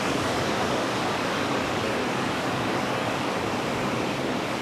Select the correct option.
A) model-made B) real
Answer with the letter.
A